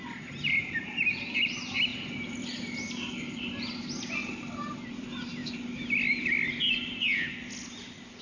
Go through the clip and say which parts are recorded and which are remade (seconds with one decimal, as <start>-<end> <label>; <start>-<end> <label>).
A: 0.0-1.9 recorded; 1.9-3.6 remade; 3.6-8.2 recorded